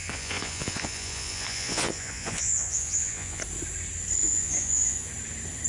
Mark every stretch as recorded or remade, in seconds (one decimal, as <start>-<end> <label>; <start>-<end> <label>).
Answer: 0.0-3.4 remade; 3.4-4.2 recorded; 4.2-5.1 remade; 5.1-5.7 recorded